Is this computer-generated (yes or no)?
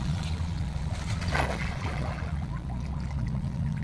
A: yes